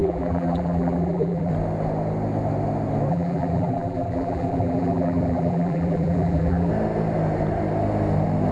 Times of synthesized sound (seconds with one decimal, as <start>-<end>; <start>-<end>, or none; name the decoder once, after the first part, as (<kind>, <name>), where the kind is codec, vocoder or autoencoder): 0.0-1.5 (vocoder, BigVGAN v2); 3.1-6.7